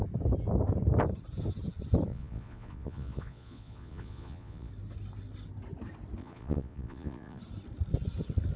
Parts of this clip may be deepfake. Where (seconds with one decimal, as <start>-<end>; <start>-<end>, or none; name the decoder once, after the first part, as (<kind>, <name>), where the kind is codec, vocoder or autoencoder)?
2.1-4.7 (vocoder, Vocos); 6.2-7.4